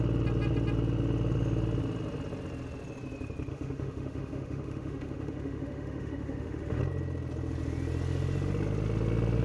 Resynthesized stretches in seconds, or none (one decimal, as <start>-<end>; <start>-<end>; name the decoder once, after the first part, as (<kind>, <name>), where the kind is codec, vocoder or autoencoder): 3.5-6.8 (autoencoder, DAC-VAE)